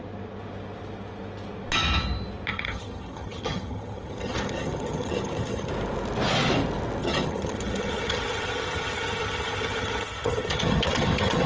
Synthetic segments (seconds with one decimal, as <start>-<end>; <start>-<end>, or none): 2.5-5.7; 7.0-11.5